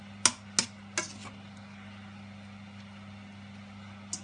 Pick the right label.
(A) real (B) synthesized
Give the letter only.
A